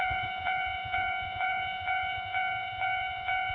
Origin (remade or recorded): remade